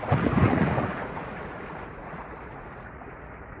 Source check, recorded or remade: remade